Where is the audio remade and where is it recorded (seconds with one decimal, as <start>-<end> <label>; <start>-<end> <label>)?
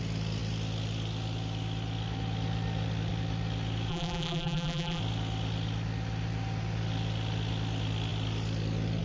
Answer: 0.0-3.9 recorded; 3.9-5.0 remade; 5.0-9.0 recorded